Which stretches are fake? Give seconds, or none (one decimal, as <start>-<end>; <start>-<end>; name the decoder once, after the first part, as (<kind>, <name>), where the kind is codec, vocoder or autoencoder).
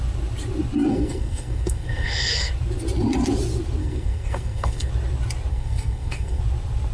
0.9-2.5 (codec, SNAC); 3.8-4.9; 5.5-6.4